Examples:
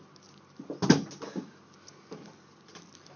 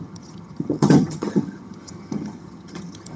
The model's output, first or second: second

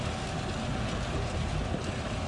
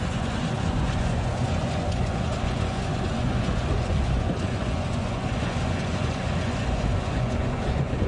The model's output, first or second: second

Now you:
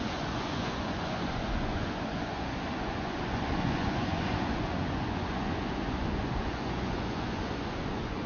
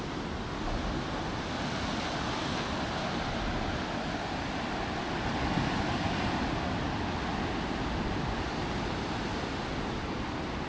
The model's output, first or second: first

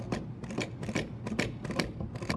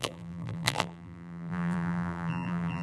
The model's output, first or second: second